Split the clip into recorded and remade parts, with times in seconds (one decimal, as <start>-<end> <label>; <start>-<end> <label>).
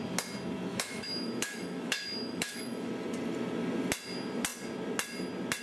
0.0-0.7 recorded; 0.7-2.9 remade; 2.9-5.6 recorded